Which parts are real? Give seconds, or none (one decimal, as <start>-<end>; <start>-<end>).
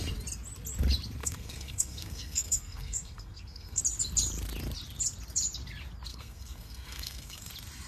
0.0-1.2; 3.8-6.1; 7.5-7.9